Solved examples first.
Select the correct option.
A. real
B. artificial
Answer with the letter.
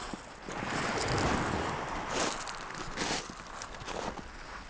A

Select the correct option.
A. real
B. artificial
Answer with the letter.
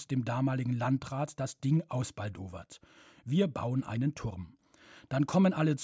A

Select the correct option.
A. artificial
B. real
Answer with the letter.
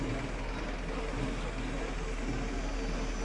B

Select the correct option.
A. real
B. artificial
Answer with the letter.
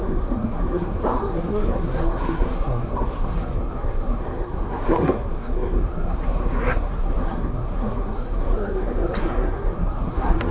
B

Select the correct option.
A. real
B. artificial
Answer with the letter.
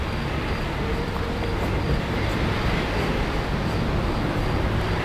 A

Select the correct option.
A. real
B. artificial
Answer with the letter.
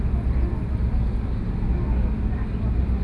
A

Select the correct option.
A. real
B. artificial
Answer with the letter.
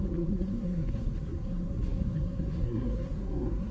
B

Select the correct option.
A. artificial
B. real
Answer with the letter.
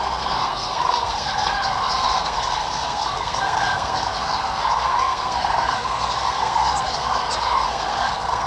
A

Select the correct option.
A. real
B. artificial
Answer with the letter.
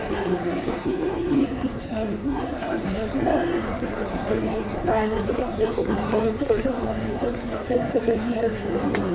B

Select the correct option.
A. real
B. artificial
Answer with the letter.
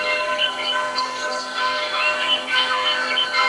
B